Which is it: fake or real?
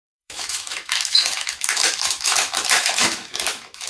fake